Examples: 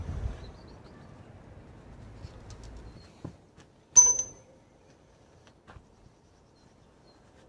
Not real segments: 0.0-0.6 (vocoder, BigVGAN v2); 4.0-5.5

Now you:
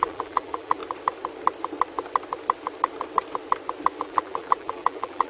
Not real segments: 0.0-0.8 (vocoder, BigVGAN v2); 4.0-5.3

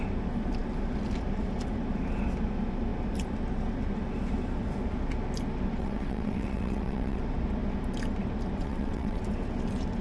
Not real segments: 5.8-7.2 (vocoder, WaveNeXt); 8.6-9.2

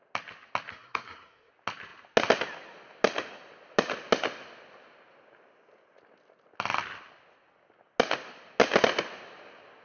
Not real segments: 0.7-1.5 (codec, SNAC)